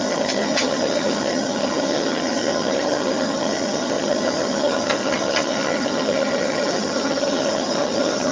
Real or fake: fake